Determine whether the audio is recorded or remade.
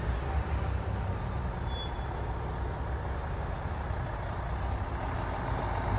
recorded